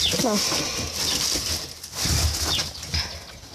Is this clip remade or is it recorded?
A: recorded